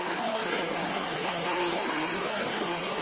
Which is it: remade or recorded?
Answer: remade